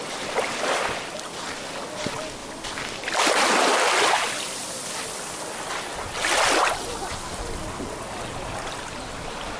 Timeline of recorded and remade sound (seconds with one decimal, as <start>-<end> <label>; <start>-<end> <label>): 0.0-9.6 recorded